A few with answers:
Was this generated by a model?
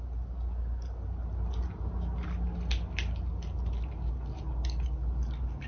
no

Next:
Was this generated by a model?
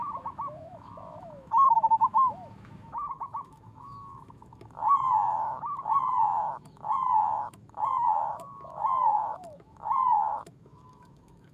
yes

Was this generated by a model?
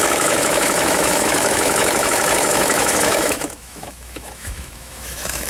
yes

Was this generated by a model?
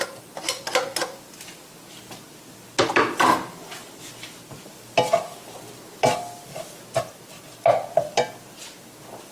no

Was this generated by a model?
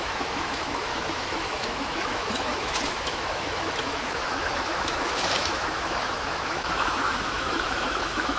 yes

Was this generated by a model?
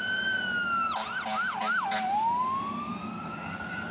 no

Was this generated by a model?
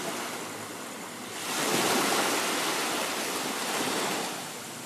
no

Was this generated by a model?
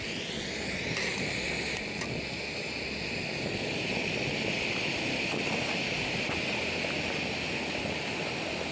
no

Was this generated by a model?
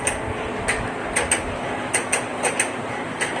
no